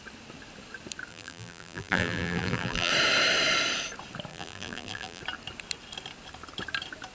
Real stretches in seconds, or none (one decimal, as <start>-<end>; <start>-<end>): 0.0-1.1; 2.9-4.3; 5.2-7.1